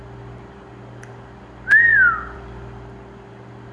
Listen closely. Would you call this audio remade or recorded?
recorded